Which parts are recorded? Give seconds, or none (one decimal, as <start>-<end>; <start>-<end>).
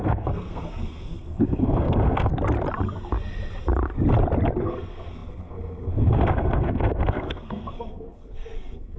2.3-4.6